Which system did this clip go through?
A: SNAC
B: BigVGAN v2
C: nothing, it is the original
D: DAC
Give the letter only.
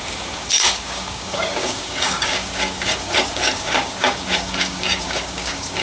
D